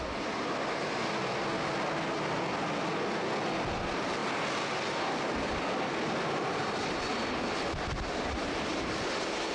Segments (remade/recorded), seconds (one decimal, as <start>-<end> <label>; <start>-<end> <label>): 0.0-9.5 recorded

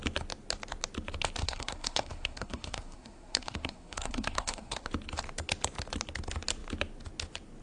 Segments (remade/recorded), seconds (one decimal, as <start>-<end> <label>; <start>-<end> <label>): 0.0-1.4 recorded; 1.4-4.9 remade; 4.9-7.6 recorded